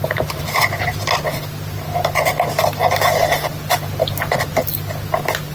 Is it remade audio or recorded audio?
recorded